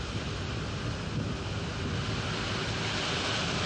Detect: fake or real real